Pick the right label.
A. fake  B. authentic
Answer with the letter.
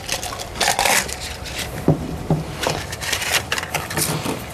A